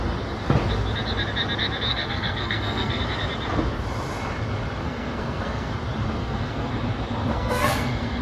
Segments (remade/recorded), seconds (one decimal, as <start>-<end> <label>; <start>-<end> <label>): 0.0-1.9 recorded; 1.9-3.0 remade; 3.0-4.8 recorded; 4.8-5.7 remade; 5.7-6.2 recorded; 6.2-6.7 remade; 6.7-7.3 recorded; 7.3-8.2 remade